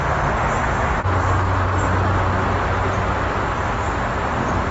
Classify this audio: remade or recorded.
recorded